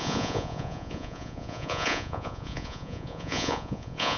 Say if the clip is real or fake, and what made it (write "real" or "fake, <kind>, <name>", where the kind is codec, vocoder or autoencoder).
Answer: fake, vocoder, Vocos